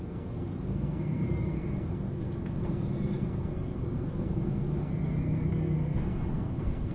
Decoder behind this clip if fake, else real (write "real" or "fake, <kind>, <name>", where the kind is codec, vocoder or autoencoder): fake, codec, SNAC